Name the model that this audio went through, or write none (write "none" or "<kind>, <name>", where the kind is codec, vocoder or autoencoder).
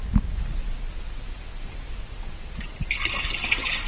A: none